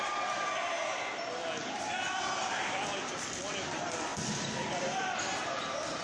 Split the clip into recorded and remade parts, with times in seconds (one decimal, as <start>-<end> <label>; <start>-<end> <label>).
0.0-6.0 recorded